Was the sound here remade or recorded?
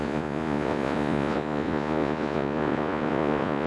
remade